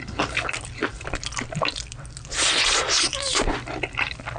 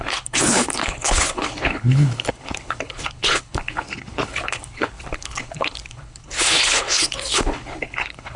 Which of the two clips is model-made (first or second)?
second